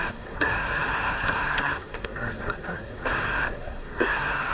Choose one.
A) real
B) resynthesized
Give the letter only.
B